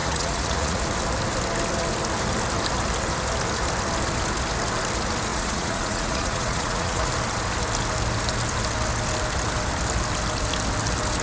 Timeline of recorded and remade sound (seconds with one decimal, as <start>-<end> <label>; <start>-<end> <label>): 0.0-0.8 remade; 0.8-5.3 recorded; 5.3-7.1 remade; 7.1-11.2 recorded